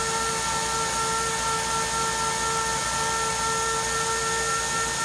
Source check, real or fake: real